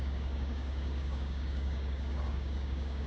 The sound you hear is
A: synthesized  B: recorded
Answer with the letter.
A